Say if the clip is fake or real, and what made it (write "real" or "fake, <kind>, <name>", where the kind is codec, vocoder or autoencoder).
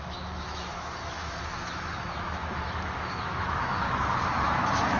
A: fake, autoencoder, DAC-VAE